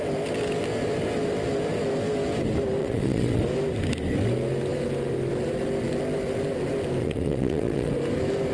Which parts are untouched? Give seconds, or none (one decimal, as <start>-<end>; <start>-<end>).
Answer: 0.0-2.8; 3.4-7.0; 7.9-8.5